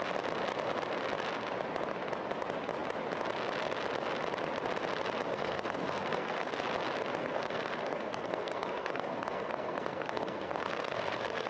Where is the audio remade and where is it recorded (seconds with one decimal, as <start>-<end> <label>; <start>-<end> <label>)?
0.0-5.3 recorded; 5.3-6.5 remade; 6.5-7.2 recorded; 7.2-11.5 remade